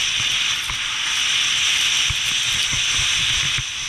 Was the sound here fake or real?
real